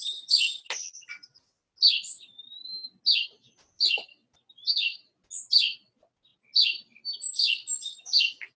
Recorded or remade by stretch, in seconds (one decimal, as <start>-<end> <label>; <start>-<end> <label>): 0.0-8.6 recorded